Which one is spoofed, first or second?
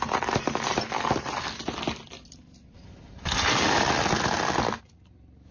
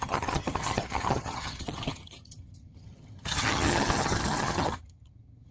second